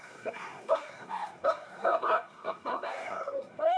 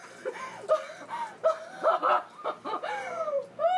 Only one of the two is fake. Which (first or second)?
first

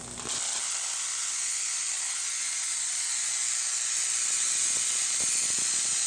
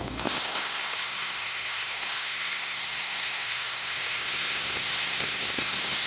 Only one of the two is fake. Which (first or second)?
second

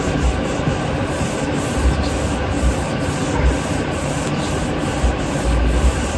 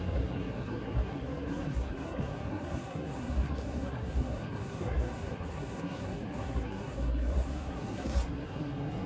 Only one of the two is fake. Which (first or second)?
second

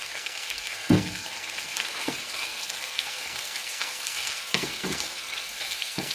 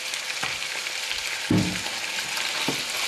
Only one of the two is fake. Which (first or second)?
first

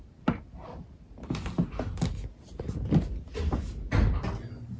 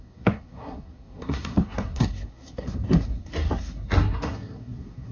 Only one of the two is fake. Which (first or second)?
second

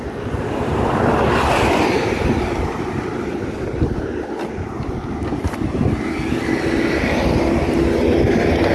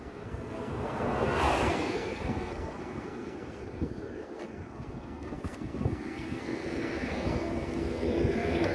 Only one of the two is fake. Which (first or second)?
second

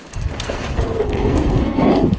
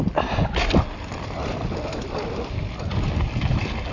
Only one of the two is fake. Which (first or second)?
first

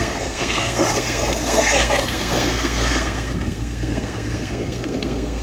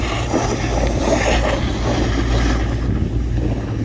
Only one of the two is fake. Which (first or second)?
first